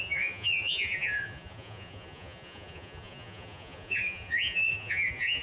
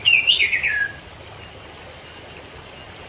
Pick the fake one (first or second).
first